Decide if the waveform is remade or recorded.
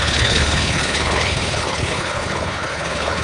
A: remade